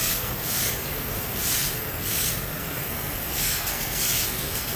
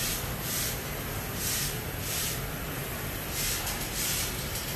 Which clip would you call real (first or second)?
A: second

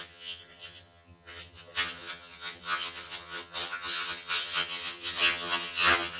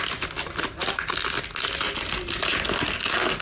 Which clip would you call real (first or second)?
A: second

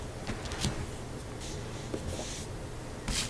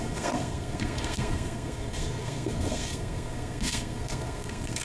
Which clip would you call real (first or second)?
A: first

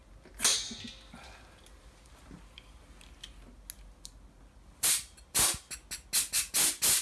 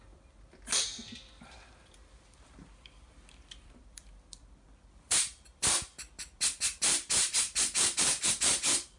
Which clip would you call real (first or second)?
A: first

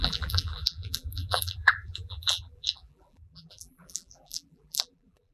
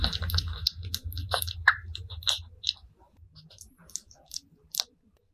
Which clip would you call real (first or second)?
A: second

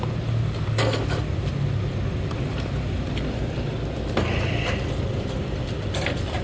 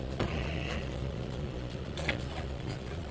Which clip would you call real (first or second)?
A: first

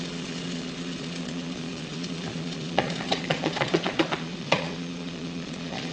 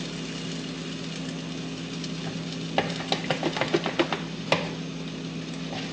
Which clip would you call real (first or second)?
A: second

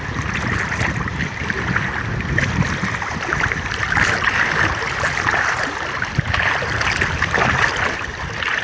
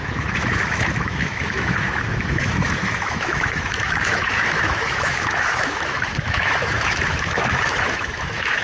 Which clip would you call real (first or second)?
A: first